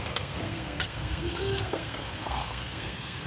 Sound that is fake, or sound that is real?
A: fake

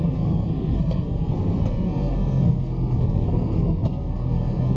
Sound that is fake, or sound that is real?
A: fake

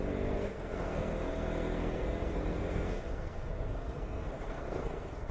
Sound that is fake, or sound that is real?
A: fake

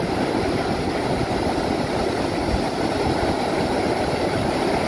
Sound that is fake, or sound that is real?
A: real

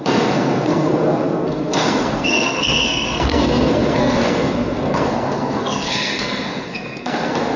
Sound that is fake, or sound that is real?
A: fake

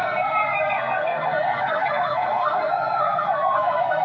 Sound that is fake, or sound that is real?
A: fake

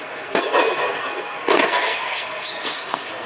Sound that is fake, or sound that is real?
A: fake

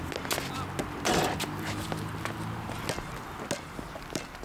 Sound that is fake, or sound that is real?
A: real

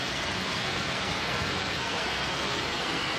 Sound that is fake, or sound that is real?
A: fake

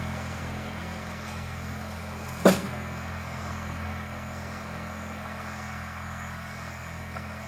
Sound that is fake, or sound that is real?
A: fake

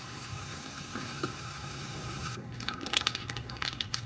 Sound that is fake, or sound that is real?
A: fake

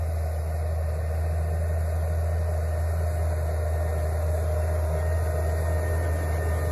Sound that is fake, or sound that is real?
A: real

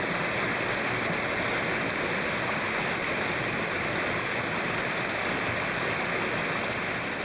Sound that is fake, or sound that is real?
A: real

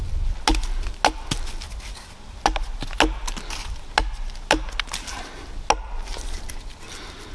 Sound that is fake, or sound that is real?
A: real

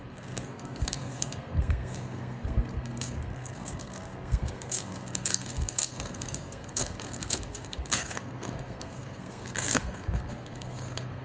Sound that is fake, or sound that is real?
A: fake